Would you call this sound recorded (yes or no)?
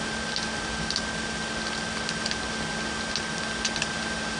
yes